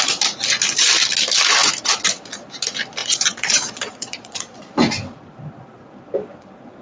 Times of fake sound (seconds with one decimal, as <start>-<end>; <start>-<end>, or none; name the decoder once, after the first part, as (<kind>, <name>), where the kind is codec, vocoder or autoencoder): 3.0-4.6 (vocoder, Vocos)